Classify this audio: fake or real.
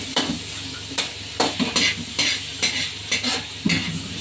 real